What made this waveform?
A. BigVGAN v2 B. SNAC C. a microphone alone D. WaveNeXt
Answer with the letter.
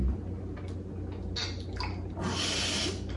C